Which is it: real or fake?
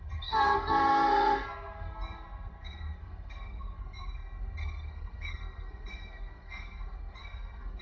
fake